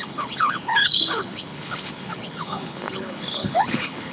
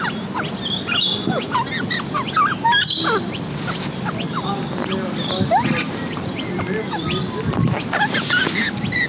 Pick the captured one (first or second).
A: second